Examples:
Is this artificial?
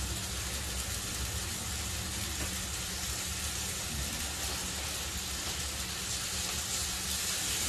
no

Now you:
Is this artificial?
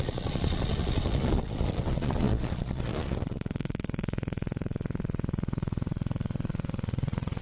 yes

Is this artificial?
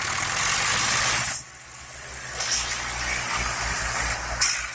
no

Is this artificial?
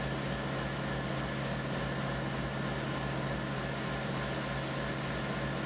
no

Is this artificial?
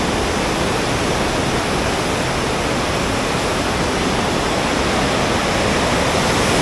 no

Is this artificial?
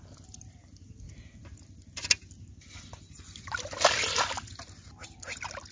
no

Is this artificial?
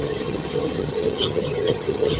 yes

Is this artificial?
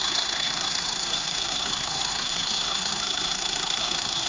yes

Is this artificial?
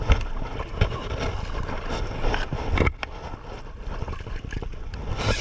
no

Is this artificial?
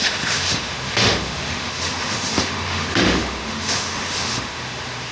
yes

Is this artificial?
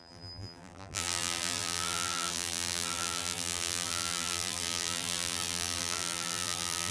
yes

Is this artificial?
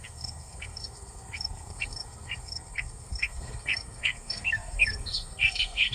yes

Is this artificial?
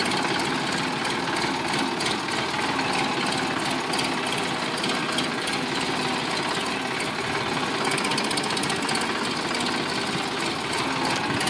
no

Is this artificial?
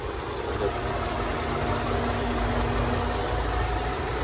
no